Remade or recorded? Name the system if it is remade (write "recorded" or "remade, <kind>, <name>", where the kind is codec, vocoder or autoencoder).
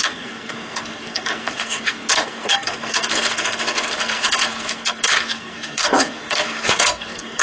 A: remade, codec, SNAC